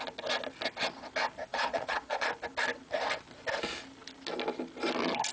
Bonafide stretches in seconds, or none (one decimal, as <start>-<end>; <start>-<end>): 0.0-1.5; 2.3-5.3